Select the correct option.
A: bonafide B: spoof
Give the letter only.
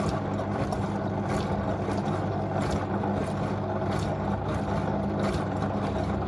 A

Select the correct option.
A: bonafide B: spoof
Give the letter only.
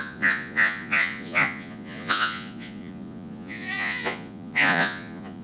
B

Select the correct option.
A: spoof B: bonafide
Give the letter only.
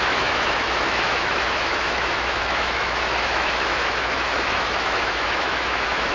A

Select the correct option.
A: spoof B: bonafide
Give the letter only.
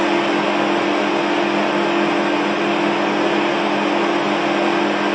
B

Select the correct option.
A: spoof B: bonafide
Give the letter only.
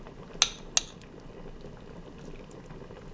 B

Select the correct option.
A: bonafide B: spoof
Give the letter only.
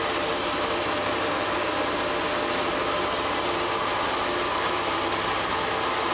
A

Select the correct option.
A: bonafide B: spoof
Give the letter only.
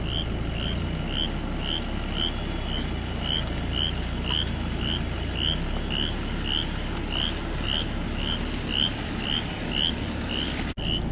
A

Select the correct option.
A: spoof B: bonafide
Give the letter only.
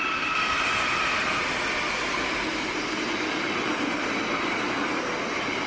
B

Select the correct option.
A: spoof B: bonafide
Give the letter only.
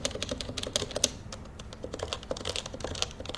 B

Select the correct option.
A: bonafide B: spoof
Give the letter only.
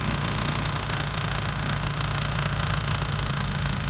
B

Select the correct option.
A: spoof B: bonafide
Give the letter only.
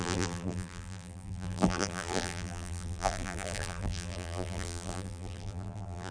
A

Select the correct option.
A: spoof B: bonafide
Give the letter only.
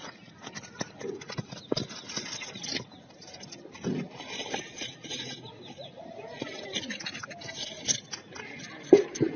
B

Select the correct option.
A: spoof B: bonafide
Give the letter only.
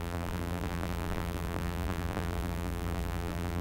A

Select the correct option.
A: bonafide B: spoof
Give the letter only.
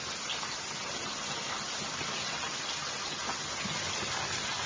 A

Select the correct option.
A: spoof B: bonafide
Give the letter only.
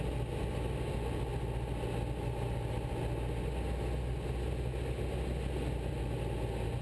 B